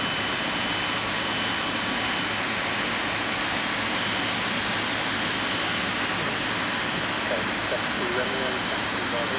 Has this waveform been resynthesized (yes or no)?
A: no